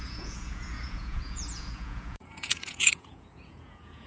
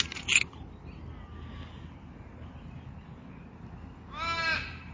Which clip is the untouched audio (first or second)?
second